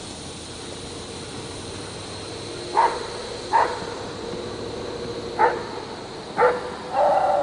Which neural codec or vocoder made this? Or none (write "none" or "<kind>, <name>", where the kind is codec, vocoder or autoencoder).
none